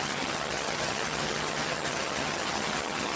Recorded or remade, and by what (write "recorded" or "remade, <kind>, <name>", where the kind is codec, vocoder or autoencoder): remade, vocoder, HiFi-GAN